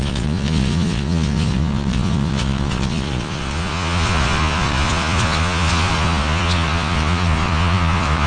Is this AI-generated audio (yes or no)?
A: yes